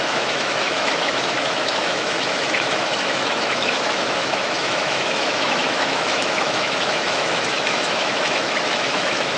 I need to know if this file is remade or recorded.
remade